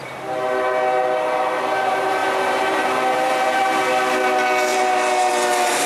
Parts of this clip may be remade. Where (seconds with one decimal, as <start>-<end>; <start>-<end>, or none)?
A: 2.2-3.8; 4.7-5.3

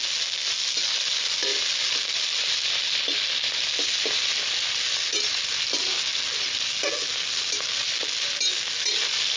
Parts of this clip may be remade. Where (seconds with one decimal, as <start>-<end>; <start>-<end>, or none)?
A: none

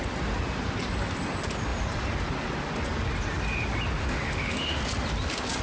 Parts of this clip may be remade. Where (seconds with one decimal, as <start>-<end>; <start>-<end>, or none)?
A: 4.0-4.8

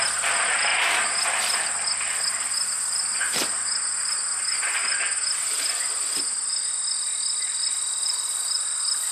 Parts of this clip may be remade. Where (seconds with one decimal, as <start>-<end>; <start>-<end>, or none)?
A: none

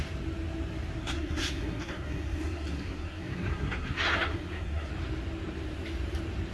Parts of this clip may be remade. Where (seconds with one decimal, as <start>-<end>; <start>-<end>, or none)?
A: 1.0-4.9

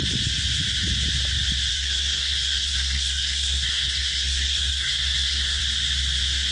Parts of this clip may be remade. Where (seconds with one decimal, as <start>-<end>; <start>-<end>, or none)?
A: 1.7-5.6

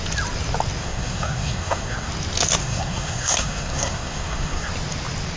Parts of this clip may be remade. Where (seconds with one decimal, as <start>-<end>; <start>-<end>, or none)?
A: 0.8-2.1; 2.6-4.7

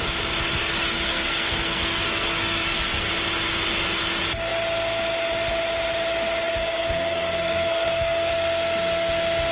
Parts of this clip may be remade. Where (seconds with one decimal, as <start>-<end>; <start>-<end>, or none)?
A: 0.6-3.1; 6.6-8.3